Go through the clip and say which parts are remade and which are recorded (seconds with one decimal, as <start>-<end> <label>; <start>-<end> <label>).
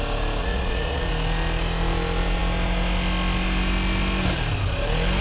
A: 0.0-0.4 recorded; 0.4-1.1 remade; 1.1-5.2 recorded